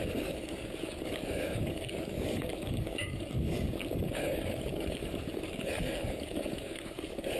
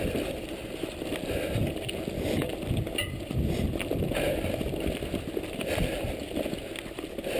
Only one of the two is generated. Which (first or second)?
first